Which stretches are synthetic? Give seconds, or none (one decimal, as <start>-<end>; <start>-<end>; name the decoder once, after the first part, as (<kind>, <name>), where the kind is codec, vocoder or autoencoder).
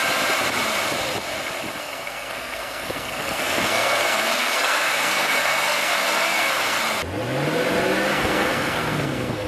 1.8-6.8 (codec, SNAC); 8.1-9.5